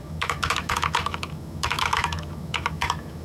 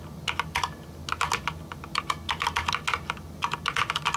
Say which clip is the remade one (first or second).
first